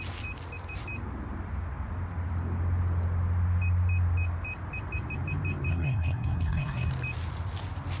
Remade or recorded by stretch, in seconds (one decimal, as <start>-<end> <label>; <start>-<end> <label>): 0.0-5.7 recorded; 5.7-6.9 remade; 6.9-8.0 recorded

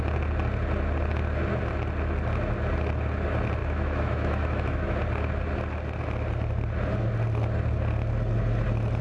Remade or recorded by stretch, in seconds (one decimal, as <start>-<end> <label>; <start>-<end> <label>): 0.0-3.6 recorded; 3.6-5.0 remade; 5.0-9.0 recorded

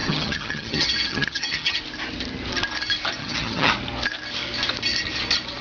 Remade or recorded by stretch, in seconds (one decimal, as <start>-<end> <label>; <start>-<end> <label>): 0.0-1.8 remade; 1.8-3.2 recorded; 3.2-3.7 remade; 3.7-5.6 recorded